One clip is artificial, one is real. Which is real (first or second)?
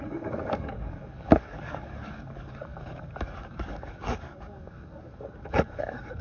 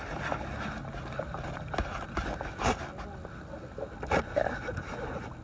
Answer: second